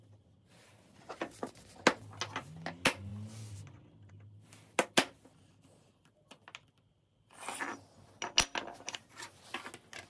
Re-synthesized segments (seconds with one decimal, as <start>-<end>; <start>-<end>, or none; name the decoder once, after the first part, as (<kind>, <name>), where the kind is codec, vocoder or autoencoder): none